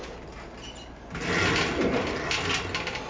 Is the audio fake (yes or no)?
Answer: no